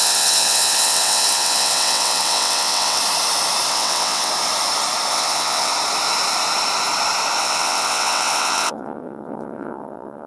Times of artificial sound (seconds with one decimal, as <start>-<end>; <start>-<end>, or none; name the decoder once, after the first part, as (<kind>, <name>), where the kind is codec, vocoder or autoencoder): 0.0-3.0 (vocoder, WaveNeXt); 3.7-4.3; 5.1-5.7; 7.4-10.3